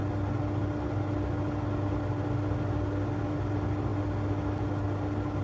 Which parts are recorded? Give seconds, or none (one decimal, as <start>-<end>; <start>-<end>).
0.0-5.4